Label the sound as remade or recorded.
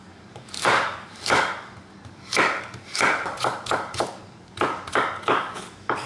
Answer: remade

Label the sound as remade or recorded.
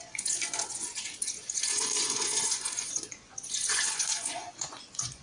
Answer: remade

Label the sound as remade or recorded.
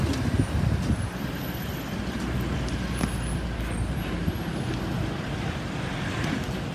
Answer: recorded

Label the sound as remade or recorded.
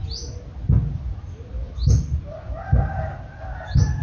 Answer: recorded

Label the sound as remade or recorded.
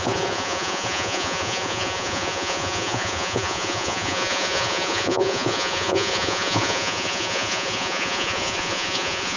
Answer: remade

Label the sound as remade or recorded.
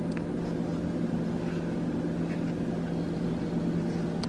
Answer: recorded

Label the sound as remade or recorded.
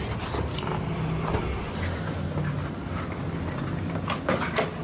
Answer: recorded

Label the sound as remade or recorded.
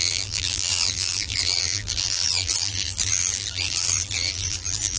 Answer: remade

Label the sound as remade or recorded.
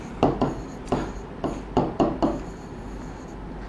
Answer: recorded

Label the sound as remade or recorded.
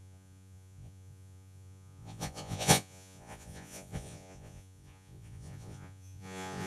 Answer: remade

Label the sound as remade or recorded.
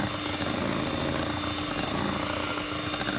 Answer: recorded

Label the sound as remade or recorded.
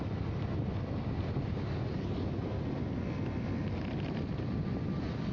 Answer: recorded